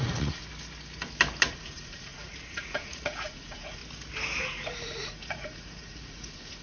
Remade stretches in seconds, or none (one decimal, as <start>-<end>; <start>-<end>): 0.0-0.4; 1.5-3.8; 4.4-6.6